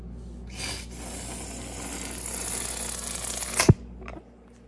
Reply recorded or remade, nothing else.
recorded